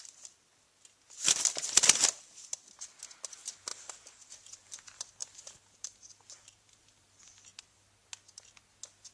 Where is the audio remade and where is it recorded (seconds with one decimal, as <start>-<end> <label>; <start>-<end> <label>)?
0.0-5.2 recorded; 5.2-7.1 remade; 7.1-9.1 recorded